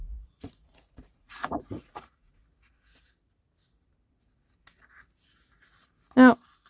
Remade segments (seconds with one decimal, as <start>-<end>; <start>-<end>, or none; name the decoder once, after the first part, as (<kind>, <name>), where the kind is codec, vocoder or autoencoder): 0.0-2.4 (vocoder, Vocos)